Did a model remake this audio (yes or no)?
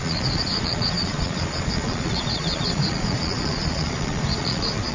yes